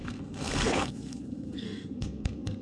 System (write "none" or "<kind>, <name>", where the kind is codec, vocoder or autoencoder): codec, SNAC